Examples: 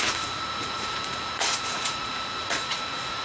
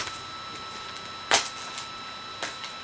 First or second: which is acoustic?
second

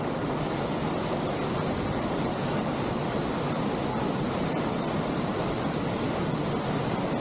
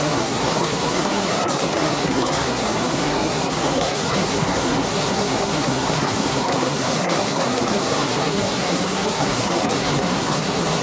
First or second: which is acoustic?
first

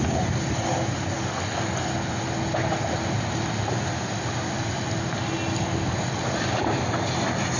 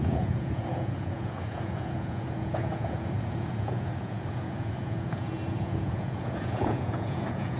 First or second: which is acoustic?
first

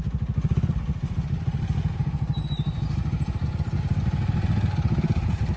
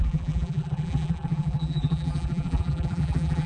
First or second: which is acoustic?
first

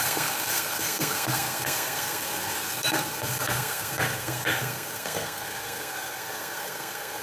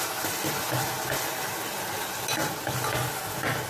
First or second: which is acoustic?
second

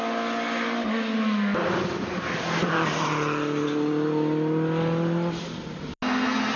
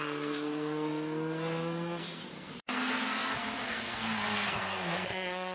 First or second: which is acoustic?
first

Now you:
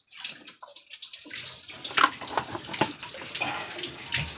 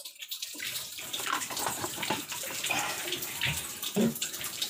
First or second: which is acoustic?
first